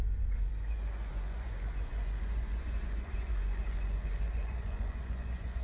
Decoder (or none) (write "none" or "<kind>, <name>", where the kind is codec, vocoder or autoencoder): vocoder, Vocos